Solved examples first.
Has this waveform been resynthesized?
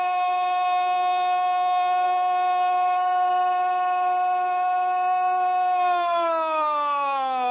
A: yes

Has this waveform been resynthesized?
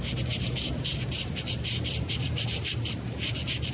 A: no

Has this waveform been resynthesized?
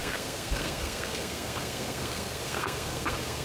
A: yes